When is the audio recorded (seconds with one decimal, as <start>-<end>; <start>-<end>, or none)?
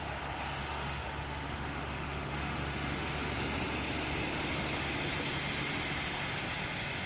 0.0-0.6; 3.3-7.1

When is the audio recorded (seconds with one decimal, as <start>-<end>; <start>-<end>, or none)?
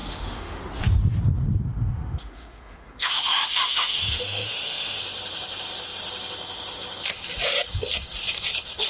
0.6-1.8; 5.0-8.9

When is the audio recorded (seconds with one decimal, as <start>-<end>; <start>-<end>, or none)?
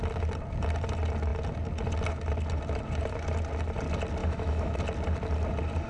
0.0-4.2; 4.8-5.9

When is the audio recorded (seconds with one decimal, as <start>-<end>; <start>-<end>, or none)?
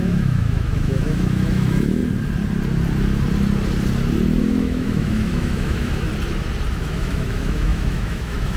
2.0-4.4; 6.1-6.7